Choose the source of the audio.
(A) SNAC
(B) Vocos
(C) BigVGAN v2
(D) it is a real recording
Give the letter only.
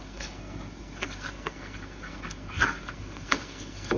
A